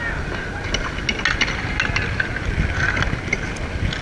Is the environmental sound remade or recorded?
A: recorded